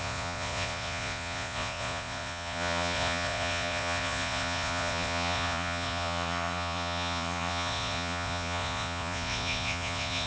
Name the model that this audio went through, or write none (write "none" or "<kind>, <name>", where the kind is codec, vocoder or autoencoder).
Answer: vocoder, Vocos